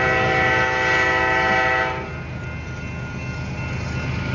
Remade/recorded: recorded